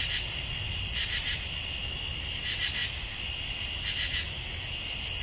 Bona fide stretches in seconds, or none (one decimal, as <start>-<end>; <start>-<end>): 0.0-5.2